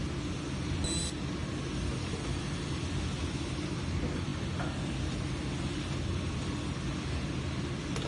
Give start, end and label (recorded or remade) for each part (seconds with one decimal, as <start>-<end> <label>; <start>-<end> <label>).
0.0-8.1 recorded